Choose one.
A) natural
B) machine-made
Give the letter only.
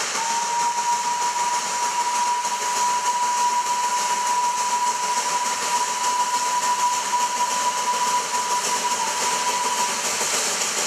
A